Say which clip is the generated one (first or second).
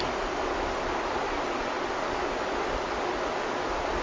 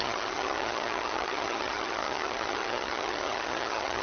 second